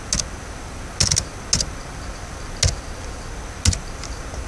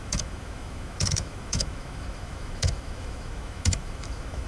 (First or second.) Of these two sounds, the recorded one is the first